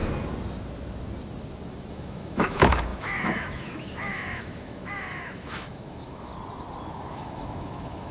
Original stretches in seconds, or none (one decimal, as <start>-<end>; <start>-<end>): 0.0-1.9; 6.3-6.9